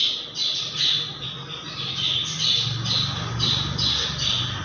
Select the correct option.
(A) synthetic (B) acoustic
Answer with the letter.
B